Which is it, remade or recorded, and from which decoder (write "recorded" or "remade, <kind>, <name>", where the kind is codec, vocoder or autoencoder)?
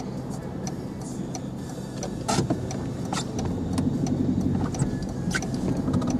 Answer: recorded